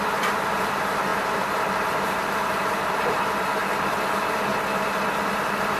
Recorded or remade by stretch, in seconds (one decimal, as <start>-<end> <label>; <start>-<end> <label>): 0.0-4.5 remade; 4.5-5.8 recorded